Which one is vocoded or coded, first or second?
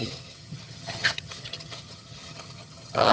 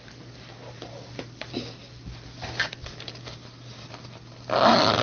first